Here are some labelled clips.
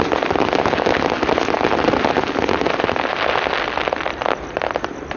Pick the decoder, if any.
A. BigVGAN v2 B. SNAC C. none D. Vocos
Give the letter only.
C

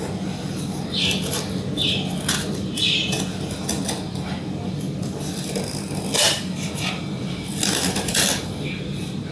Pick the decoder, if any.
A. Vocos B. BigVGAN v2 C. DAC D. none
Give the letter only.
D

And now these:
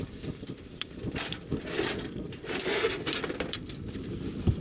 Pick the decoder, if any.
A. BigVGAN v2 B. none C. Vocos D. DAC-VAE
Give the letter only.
A